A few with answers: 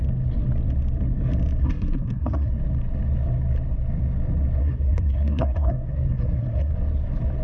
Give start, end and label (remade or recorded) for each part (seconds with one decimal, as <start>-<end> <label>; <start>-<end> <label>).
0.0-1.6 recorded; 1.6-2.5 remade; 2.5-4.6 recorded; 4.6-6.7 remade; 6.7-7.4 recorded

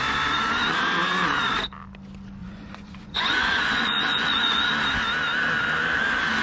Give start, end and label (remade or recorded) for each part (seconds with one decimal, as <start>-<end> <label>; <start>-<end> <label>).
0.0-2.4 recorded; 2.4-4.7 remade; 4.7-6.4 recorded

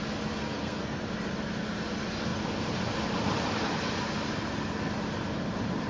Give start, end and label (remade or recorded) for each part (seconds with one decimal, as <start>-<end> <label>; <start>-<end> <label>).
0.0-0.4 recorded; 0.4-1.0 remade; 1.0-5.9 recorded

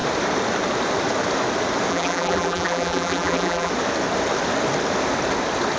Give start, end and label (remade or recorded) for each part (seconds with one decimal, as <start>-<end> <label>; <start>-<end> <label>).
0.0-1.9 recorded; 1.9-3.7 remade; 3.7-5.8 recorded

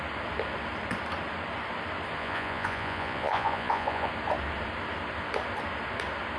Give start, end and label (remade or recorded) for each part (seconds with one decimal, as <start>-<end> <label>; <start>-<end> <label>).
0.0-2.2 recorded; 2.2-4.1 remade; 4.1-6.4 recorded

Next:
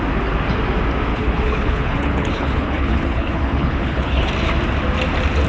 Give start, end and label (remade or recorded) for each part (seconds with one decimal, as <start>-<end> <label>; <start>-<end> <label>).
0.0-1.1 recorded; 1.1-4.3 remade; 4.3-5.5 recorded

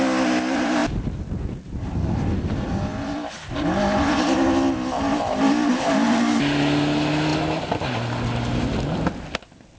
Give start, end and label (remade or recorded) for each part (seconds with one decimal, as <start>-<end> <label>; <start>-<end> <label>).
0.0-9.8 recorded

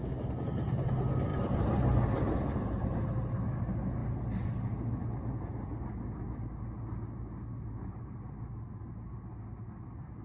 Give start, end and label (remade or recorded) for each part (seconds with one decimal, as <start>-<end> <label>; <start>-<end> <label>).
0.0-1.3 recorded; 1.3-3.3 remade; 3.3-10.2 recorded